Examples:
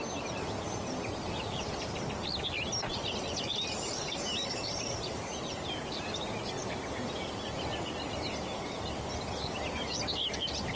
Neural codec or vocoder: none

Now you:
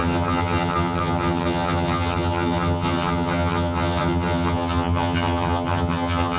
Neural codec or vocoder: vocoder, HiFi-GAN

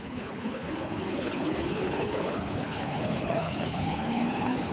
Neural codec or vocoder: codec, HILCodec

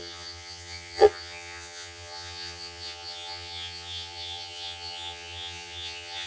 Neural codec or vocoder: vocoder, HiFi-GAN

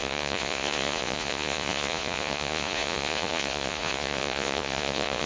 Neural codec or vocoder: vocoder, Vocos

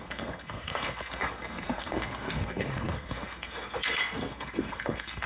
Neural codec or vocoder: codec, SNAC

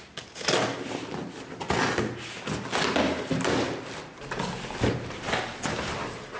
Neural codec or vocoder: none